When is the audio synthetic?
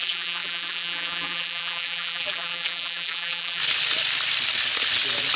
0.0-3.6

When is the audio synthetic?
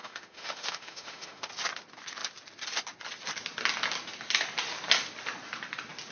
0.0-1.5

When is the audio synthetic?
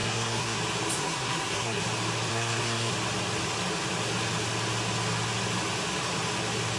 0.0-0.6; 1.0-1.8; 2.3-2.9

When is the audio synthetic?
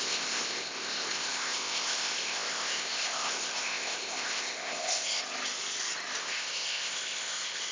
0.0-5.2; 6.2-7.7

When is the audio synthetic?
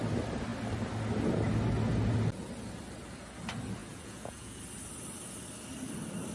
3.8-4.6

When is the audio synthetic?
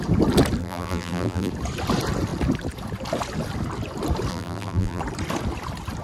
0.6-1.5; 4.3-5.0